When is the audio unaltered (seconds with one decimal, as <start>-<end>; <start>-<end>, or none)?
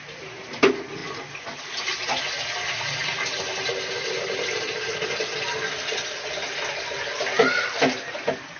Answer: 0.0-8.6